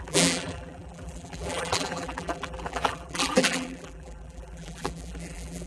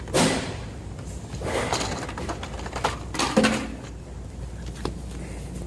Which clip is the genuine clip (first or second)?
second